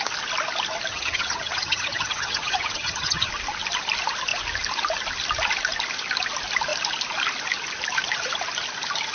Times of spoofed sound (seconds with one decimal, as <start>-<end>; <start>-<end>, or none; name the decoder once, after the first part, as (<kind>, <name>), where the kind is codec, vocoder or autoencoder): 0.9-3.3 (vocoder, HiFi-GAN)